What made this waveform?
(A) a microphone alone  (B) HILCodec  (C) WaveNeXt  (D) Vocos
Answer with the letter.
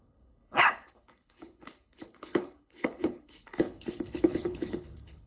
B